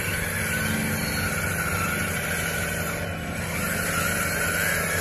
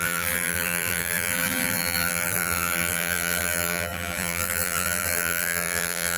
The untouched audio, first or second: first